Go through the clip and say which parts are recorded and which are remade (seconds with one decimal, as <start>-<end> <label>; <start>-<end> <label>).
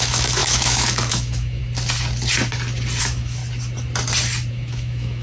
0.0-1.6 remade; 1.6-3.0 recorded; 3.0-3.4 remade; 3.4-4.5 recorded; 4.5-5.2 remade